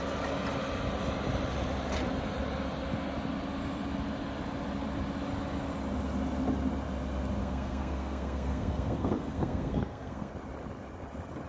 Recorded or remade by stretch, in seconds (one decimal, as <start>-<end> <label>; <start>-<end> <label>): 0.0-7.4 recorded; 7.4-10.3 remade; 10.3-11.5 recorded